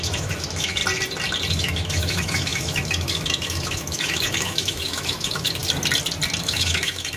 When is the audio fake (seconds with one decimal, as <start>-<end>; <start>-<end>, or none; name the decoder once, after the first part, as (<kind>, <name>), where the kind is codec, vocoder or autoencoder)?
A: 0.0-0.8 (autoencoder, DAC-VAE); 1.5-5.6; 6.4-7.2